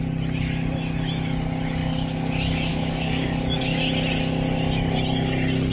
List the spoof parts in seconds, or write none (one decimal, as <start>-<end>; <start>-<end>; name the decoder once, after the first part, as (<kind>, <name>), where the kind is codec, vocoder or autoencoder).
1.8-2.3 (codec, DAC); 2.7-3.8